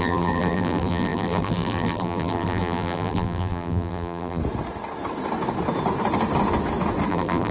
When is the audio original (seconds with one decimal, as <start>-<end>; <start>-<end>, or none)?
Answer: 4.4-7.1